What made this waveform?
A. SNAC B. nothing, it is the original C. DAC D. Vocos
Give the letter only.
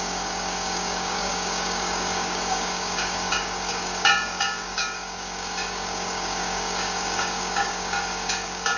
C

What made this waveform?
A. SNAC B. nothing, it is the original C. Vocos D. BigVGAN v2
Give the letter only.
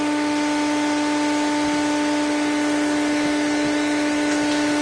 B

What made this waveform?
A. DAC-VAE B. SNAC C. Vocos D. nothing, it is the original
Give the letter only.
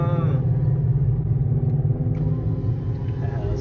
D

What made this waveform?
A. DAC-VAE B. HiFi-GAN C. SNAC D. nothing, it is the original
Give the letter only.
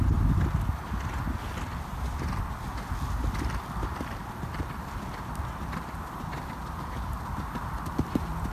D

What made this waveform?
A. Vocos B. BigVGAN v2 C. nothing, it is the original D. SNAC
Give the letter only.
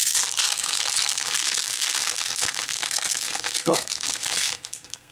D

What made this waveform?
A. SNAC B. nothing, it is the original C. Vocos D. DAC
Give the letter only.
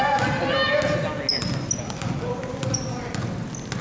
B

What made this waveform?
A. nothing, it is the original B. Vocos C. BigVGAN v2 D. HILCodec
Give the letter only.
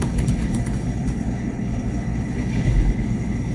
D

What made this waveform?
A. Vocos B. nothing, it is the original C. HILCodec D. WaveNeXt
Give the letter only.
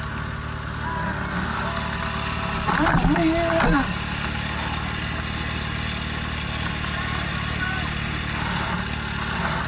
B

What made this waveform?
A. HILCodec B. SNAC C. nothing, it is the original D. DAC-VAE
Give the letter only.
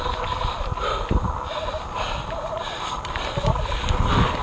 C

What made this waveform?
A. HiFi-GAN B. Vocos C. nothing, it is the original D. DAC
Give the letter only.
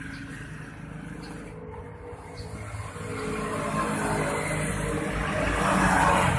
C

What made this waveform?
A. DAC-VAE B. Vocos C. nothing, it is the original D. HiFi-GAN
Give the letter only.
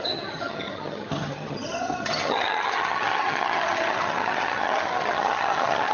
D